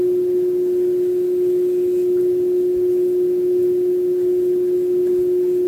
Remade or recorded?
recorded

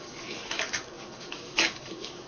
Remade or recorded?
remade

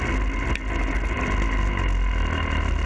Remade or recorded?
recorded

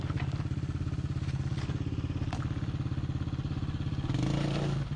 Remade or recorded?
recorded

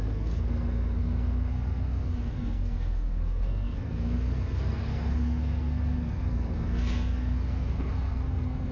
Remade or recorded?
remade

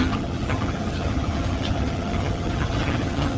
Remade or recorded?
remade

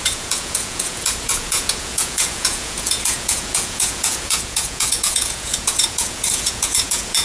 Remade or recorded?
remade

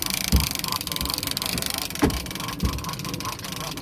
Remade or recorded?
recorded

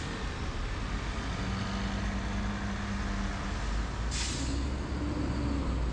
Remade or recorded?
recorded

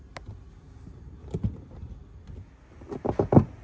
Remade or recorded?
recorded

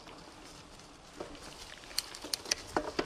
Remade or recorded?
recorded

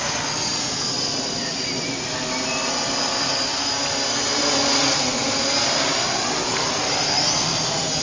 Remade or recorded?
recorded